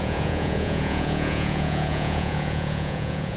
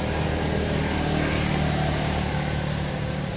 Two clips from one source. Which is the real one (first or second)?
second